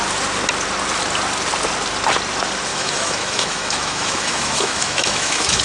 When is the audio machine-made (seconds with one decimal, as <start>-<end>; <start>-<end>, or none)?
2.7-5.6